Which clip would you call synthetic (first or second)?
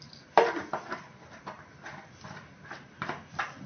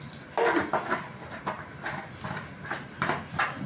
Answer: first